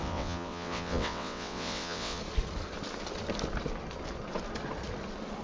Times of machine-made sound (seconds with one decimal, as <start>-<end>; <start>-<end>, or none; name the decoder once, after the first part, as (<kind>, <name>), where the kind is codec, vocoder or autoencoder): 0.0-2.2 (vocoder, WaveNeXt)